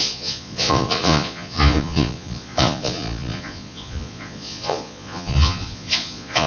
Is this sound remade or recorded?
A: remade